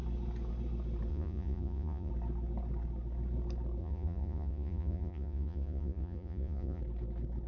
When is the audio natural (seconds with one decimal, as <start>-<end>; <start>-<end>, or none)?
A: 0.0-1.1; 2.1-3.8; 6.8-7.5